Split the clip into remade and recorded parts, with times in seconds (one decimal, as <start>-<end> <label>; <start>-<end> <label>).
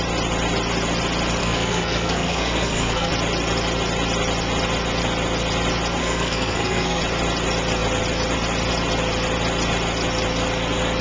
0.0-1.4 recorded; 1.4-3.1 remade; 3.1-6.0 recorded; 6.0-7.0 remade; 7.0-11.0 recorded